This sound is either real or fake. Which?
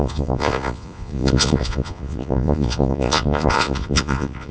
fake